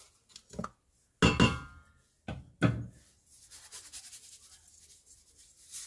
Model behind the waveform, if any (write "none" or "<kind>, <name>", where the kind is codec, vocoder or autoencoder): none